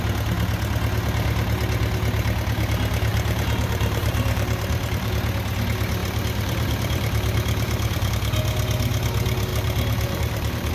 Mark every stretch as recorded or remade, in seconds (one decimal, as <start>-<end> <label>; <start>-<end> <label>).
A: 0.0-3.1 recorded; 3.1-5.1 remade; 5.1-6.0 recorded; 6.0-8.1 remade; 8.1-9.5 recorded; 9.5-10.7 remade